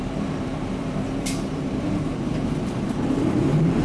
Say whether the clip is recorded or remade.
remade